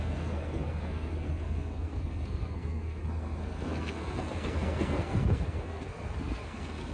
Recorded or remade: remade